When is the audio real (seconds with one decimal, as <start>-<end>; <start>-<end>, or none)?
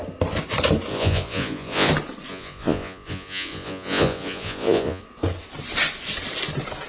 0.0-0.9; 1.9-2.3; 5.0-6.9